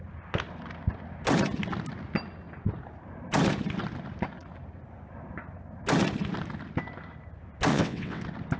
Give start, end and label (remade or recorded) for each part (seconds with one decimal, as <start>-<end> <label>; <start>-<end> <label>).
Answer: 0.0-7.7 recorded; 7.7-8.2 remade; 8.2-8.6 recorded